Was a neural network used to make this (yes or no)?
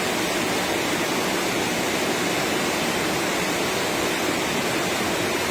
no